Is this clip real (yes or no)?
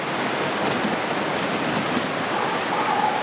yes